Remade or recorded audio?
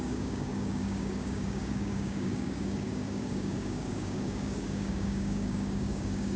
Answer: remade